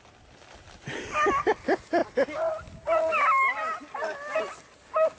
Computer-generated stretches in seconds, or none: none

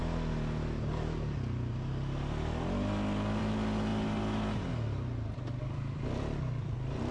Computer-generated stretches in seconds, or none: 3.4-3.9 (vocoder, BigVGAN v2); 5.6-7.1

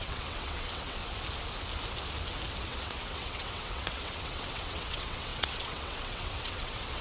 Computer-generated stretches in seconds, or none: 0.0-1.0 (vocoder, WaveNeXt); 2.6-7.0

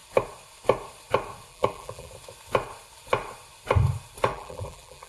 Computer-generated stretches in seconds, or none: 1.5-2.1 (vocoder, BigVGAN v2); 4.3-5.1

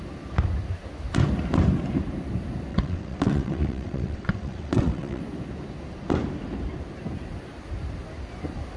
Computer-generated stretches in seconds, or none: 2.7-5.2 (vocoder, WaveNeXt)

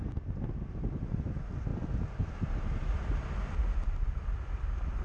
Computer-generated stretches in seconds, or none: none